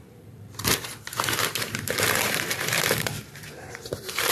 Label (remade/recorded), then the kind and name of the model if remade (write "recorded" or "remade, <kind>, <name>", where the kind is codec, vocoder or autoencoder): remade, vocoder, BigVGAN v2